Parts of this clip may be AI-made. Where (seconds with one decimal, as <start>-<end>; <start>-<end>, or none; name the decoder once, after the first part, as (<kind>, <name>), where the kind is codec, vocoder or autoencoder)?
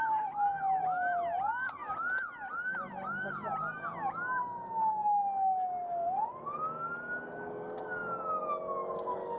none